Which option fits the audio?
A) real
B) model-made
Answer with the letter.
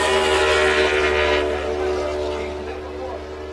A